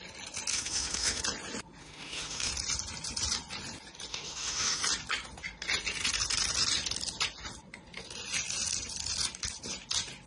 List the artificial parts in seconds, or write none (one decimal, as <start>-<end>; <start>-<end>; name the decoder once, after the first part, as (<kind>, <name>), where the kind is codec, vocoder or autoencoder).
0.5-1.2 (autoencoder, DAC-VAE); 1.8-2.5; 4.1-4.8